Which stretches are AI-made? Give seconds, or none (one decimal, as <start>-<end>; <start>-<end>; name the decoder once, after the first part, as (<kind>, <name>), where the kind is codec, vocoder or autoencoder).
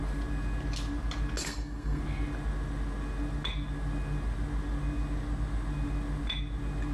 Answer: 1.4-2.0 (codec, SNAC)